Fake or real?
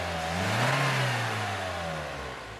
real